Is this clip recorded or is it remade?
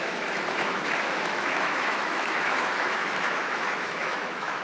remade